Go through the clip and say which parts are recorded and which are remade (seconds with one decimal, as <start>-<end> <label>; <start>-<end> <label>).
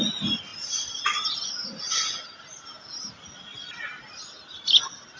0.0-5.2 recorded